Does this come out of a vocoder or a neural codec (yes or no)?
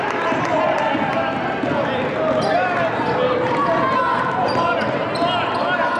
no